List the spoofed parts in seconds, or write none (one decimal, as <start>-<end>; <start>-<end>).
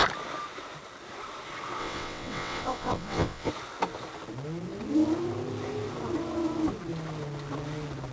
1.8-3.5